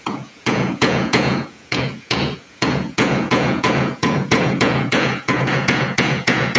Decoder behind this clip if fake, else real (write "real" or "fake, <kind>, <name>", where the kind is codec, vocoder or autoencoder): fake, vocoder, Vocos